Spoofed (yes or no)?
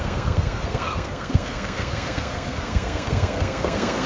yes